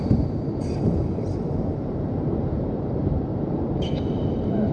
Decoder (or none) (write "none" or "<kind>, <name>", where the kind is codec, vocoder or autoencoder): vocoder, BigVGAN v2